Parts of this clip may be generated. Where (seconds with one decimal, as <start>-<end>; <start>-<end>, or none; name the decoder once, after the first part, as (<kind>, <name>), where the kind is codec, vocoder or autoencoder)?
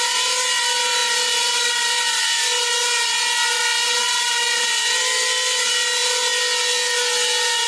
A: none